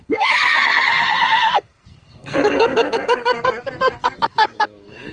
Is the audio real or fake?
fake